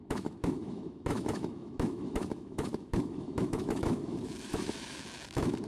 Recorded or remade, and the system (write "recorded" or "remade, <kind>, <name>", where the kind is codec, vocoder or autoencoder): remade, autoencoder, DAC-VAE